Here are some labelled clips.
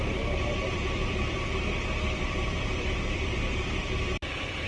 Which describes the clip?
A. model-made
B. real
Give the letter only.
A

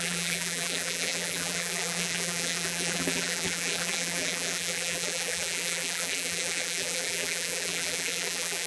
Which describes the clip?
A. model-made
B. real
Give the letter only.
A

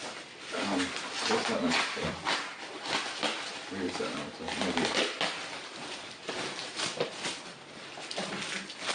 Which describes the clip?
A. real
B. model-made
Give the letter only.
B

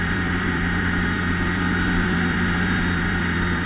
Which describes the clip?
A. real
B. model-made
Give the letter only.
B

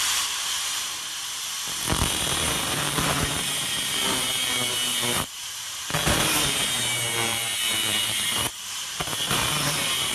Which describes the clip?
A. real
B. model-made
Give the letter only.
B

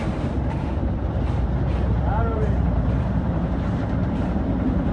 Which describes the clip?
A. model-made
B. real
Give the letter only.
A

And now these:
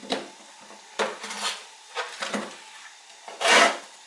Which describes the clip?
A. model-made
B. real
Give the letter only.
B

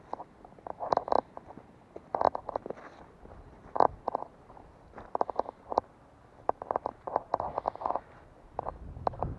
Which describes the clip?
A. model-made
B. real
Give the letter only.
B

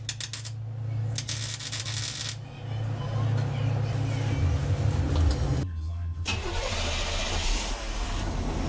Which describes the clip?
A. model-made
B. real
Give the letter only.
B